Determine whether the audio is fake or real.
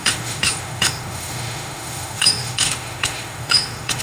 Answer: fake